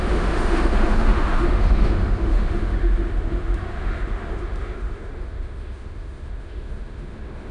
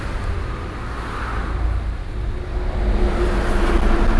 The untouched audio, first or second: second